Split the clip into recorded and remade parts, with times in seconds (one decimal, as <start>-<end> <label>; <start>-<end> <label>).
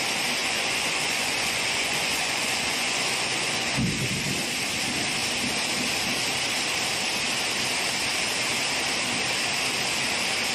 0.0-0.4 recorded; 0.4-3.9 remade; 3.9-10.5 recorded